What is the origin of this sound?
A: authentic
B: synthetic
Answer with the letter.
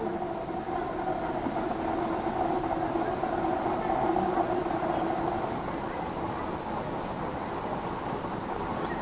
A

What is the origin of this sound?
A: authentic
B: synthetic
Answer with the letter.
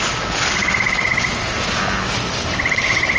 A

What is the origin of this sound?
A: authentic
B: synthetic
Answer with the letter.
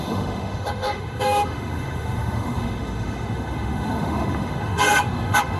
B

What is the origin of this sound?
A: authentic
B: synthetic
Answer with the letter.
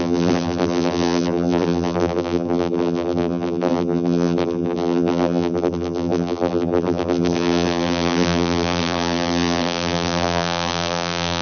B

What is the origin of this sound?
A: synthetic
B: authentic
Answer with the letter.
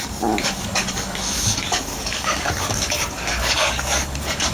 A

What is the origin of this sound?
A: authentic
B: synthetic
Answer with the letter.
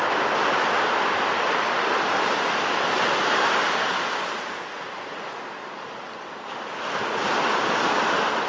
A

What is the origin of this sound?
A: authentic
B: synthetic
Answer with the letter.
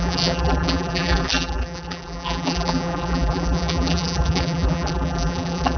B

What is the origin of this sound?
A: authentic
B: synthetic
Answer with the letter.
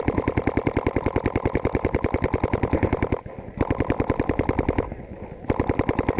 A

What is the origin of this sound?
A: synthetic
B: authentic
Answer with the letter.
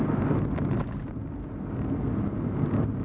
B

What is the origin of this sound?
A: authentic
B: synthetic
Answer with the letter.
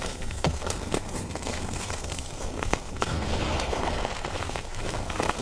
B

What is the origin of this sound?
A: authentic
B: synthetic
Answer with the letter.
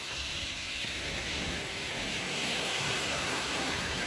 B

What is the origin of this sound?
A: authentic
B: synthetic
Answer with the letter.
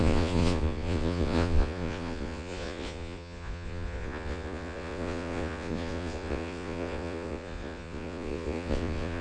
B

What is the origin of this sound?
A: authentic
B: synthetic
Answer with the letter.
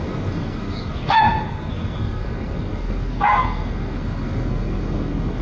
B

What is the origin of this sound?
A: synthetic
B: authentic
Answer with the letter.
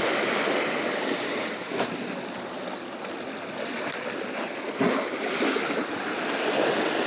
B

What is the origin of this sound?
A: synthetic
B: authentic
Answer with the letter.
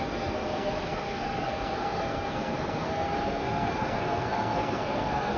A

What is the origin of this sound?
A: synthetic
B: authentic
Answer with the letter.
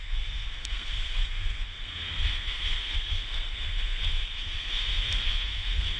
A